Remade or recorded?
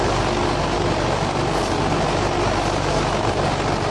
recorded